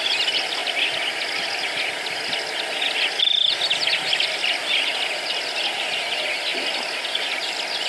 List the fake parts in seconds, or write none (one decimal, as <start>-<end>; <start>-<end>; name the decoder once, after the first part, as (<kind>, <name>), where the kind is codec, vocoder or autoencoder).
none